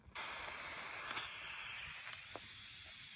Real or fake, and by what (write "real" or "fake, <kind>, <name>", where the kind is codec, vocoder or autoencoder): real